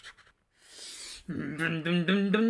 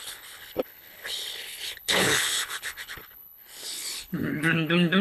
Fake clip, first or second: second